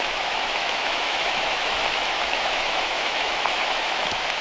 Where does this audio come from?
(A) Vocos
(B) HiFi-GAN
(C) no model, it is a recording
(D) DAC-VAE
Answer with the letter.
D